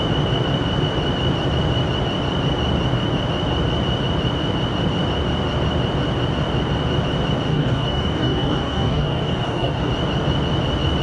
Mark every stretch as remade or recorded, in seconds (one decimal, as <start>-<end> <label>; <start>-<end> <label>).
0.0-7.5 recorded; 7.5-9.9 remade; 9.9-11.0 recorded